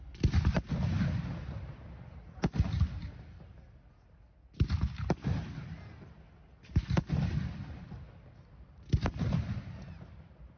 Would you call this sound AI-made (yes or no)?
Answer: no